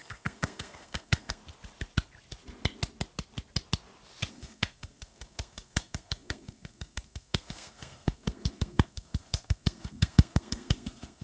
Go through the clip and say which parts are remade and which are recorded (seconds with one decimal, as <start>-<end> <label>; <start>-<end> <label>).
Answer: 0.0-1.4 remade; 1.4-4.3 recorded; 4.3-11.2 remade